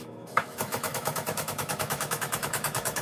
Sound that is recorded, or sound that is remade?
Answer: remade